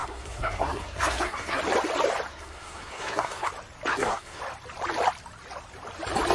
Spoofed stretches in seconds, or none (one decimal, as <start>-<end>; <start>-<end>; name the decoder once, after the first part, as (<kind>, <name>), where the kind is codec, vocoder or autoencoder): 0.0-1.6 (codec, SNAC); 2.3-3.5; 3.9-4.4